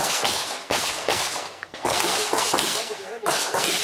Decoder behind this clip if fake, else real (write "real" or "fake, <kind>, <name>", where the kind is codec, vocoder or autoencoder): fake, codec, SNAC